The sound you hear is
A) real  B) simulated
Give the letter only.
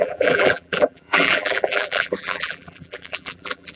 B